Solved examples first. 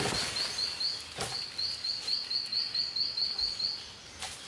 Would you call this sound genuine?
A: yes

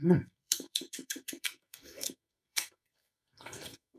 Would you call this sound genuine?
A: no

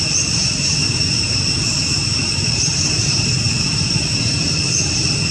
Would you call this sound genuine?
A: no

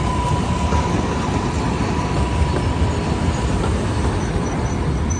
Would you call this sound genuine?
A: yes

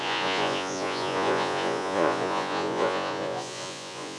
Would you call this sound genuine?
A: no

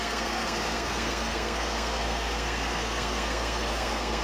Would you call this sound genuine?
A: no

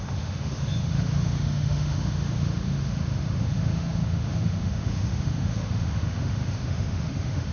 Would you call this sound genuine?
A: no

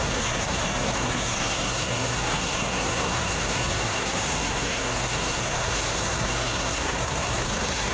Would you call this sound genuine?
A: no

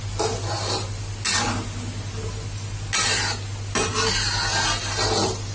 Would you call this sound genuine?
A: yes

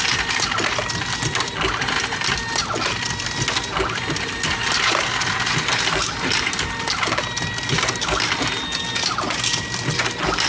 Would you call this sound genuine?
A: yes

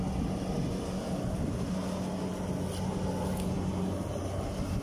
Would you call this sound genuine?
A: yes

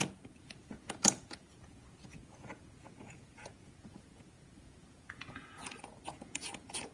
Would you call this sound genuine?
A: no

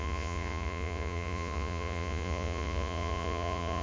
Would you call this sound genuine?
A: no